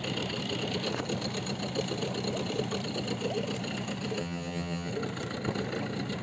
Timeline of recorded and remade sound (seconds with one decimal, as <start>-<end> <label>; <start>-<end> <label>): 0.0-4.2 recorded; 4.2-4.9 remade; 4.9-6.2 recorded

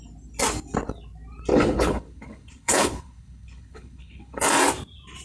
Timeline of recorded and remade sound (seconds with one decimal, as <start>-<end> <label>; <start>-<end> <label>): 0.0-1.5 recorded; 1.5-4.4 remade; 4.4-5.2 recorded